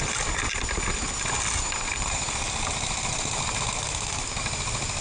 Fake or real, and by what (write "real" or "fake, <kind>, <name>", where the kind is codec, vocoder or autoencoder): real